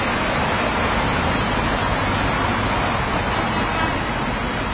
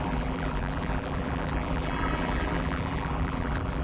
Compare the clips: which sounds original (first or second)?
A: first